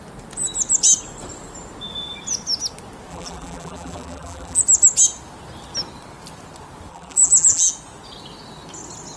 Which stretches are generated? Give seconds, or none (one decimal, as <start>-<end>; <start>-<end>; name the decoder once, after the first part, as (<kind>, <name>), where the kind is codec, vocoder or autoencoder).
3.1-4.6 (vocoder, BigVGAN v2); 6.9-7.7